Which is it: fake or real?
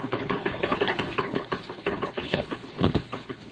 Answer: fake